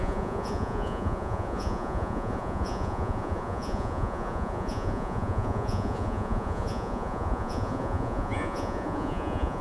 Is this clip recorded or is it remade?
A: remade